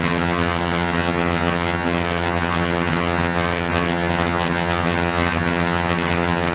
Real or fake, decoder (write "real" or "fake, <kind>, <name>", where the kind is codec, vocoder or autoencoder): fake, vocoder, HiFi-GAN